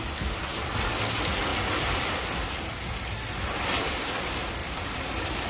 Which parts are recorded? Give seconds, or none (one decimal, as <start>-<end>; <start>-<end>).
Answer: 0.0-4.6